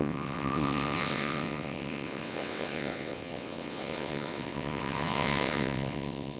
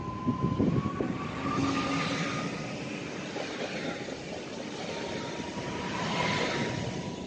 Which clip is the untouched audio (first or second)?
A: second